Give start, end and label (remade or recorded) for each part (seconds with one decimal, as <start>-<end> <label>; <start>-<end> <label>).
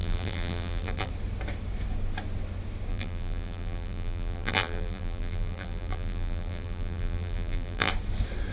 0.0-1.1 remade; 1.1-2.9 recorded; 2.9-7.9 remade; 7.9-8.5 recorded